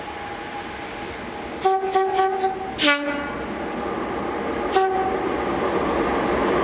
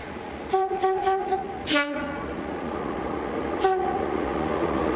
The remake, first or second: second